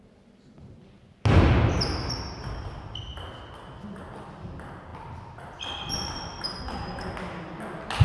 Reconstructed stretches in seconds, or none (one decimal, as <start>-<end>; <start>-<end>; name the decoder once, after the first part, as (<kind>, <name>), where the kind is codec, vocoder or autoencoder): none